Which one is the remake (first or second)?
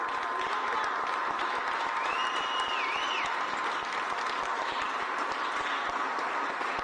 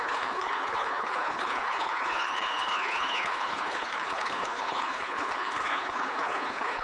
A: second